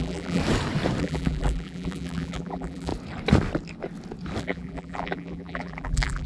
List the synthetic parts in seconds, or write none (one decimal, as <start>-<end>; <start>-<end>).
0.0-0.4; 1.0-2.9; 4.4-6.3